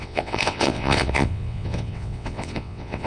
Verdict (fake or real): fake